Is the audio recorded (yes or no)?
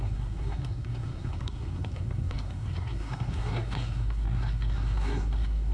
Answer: no